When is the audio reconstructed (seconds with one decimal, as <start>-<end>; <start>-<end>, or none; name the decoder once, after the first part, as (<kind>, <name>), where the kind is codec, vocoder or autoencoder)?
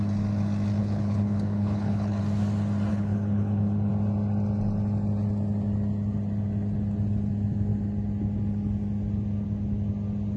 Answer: 0.8-2.2 (codec, HILCodec); 2.9-3.9